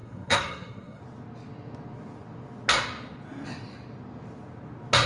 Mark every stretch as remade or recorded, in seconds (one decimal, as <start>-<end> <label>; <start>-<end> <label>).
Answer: 0.0-1.0 remade; 1.0-5.1 recorded